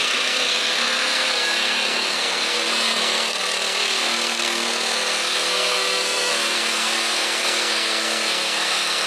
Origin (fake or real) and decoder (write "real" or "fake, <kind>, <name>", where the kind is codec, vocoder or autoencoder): fake, codec, SNAC